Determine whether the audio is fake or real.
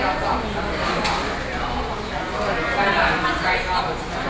real